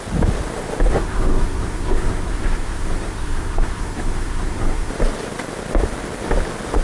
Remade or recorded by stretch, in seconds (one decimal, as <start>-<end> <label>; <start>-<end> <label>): 0.0-0.9 recorded; 0.9-4.9 remade; 4.9-6.8 recorded